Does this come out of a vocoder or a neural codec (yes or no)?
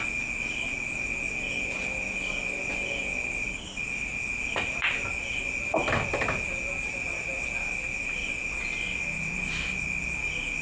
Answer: no